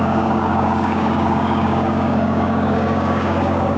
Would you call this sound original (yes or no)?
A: no